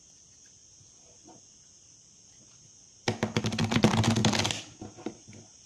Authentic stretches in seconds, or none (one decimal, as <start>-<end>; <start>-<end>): 0.6-3.4; 4.2-5.1